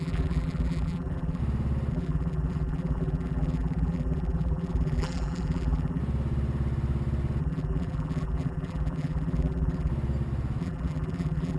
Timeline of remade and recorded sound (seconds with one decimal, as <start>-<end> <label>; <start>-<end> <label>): 0.0-1.4 remade; 1.4-1.9 recorded; 1.9-6.0 remade; 6.0-7.4 recorded; 7.4-9.9 remade; 9.9-10.6 recorded; 10.6-11.6 remade